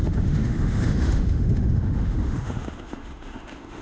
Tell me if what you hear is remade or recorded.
remade